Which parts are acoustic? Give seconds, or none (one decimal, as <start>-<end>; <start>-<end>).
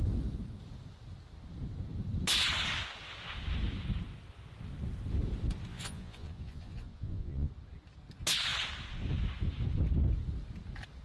0.0-5.7; 7.5-11.0